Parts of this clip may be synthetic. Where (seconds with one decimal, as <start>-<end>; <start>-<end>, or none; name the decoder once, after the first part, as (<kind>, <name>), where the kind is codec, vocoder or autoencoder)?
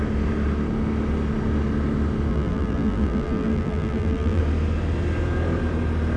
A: 2.3-4.4 (vocoder, BigVGAN v2)